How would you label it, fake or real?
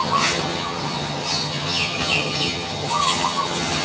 fake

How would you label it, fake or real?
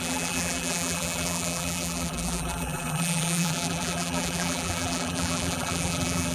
fake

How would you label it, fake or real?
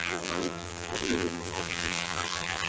fake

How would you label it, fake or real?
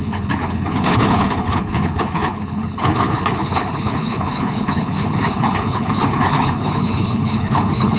fake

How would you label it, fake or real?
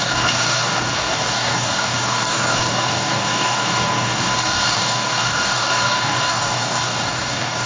fake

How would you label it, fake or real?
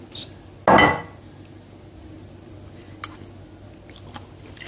real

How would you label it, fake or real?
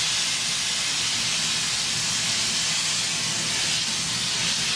real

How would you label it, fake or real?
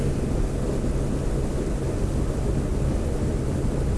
real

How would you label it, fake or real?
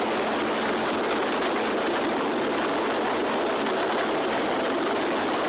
real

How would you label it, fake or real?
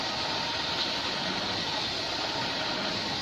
real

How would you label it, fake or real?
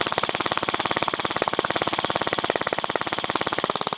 real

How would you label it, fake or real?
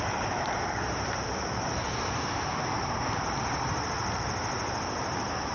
fake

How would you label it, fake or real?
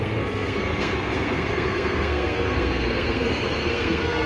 fake